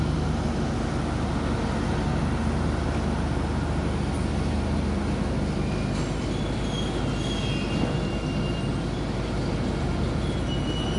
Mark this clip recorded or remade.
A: recorded